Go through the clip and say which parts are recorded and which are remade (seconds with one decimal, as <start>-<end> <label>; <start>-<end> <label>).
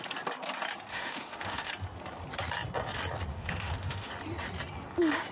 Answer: 0.0-0.9 recorded; 0.9-1.7 remade; 1.7-3.3 recorded; 3.3-4.1 remade; 4.1-5.3 recorded